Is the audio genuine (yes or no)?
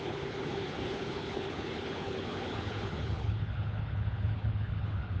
no